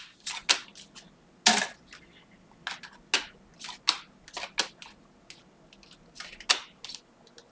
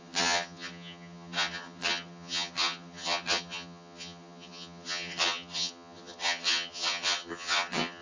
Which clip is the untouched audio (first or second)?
first